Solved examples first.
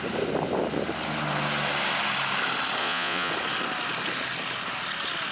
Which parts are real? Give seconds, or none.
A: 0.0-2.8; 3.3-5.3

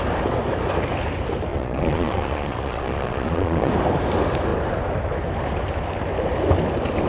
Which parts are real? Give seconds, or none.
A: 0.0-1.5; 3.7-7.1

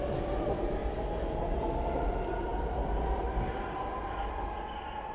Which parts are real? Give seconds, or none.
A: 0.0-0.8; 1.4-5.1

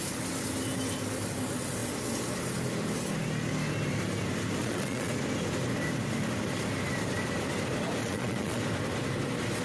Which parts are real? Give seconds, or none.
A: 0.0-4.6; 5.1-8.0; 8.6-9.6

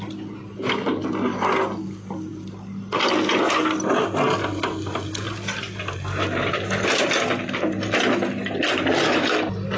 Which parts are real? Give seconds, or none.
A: 0.0-9.8

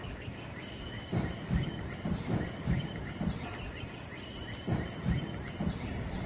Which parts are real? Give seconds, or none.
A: 3.2-6.3